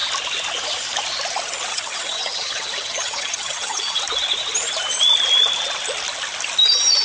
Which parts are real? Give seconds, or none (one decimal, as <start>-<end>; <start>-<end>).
0.0-1.7; 4.0-7.0

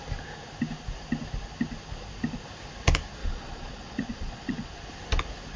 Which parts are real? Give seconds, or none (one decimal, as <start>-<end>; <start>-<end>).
0.0-3.2; 4.7-5.6

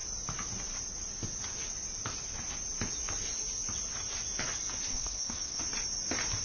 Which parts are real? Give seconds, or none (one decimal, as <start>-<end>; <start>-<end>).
0.0-4.9; 5.6-6.4

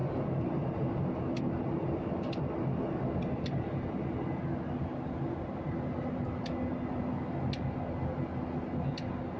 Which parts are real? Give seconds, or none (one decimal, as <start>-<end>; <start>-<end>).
0.0-9.4

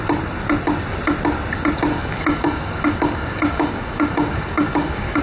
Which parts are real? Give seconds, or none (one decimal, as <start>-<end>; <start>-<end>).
0.0-1.9

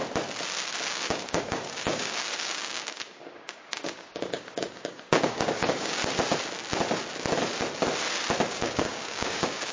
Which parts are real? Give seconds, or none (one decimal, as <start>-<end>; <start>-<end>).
0.0-0.9; 6.0-8.5

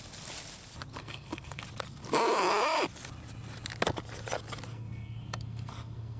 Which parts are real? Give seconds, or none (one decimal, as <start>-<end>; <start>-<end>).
0.0-1.0; 1.6-4.7